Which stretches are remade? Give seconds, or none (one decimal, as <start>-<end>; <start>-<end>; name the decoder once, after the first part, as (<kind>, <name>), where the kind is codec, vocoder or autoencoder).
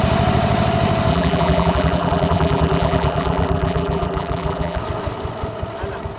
1.1-4.8 (vocoder, BigVGAN v2)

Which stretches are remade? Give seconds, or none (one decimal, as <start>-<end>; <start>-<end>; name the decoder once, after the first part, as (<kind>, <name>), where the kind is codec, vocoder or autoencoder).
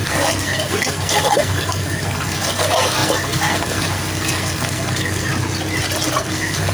0.0-5.3 (codec, SNAC); 6.2-6.7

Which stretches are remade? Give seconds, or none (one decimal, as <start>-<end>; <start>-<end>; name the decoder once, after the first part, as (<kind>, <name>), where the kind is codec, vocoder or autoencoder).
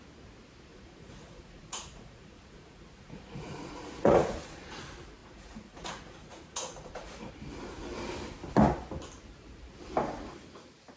0.7-4.8 (vocoder, Vocos); 5.2-7.3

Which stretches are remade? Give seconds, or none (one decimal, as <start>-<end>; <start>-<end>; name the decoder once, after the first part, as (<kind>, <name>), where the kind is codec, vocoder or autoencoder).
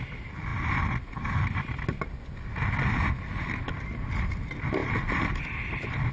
none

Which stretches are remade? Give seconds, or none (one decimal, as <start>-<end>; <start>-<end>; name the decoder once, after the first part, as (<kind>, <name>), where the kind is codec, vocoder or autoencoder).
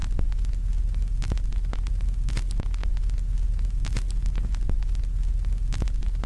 none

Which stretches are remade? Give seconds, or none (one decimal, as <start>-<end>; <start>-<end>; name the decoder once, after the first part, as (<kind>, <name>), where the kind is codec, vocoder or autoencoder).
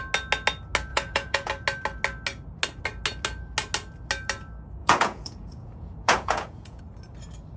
0.9-1.5 (vocoder, Vocos); 4.8-6.8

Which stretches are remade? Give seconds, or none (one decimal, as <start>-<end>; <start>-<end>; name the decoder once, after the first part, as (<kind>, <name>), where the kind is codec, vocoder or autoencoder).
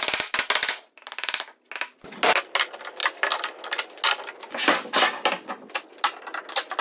none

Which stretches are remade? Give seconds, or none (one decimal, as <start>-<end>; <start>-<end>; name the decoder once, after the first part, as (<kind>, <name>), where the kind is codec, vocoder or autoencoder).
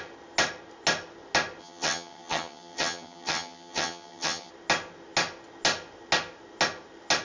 1.6-4.5 (vocoder, HiFi-GAN)